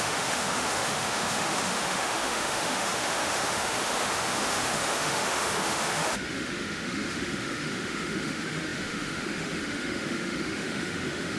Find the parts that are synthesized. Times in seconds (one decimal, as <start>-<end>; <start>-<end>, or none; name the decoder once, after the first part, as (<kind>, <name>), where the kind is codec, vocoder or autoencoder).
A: 0.0-11.4 (autoencoder, DAC-VAE)